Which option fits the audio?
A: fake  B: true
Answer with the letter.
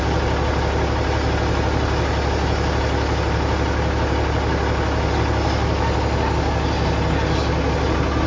B